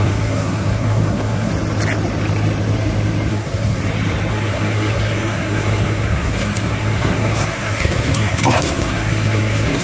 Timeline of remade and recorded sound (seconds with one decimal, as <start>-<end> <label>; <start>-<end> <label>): 0.0-1.5 remade; 1.5-3.3 recorded; 3.3-3.8 remade; 3.8-4.3 recorded; 4.3-9.8 remade